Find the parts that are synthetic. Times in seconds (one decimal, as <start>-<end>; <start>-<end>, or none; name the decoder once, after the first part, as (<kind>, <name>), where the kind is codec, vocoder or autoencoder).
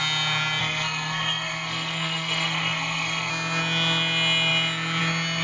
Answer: 0.6-3.3 (codec, SNAC)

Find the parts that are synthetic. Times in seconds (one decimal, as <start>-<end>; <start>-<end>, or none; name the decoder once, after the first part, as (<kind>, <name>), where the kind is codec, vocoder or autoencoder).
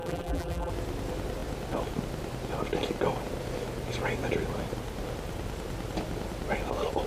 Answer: 0.0-0.7 (vocoder, BigVGAN v2)